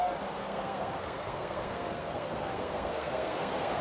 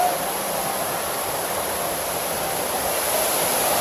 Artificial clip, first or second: first